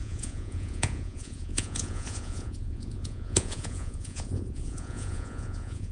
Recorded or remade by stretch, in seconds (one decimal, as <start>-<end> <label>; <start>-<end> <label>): 0.0-5.9 remade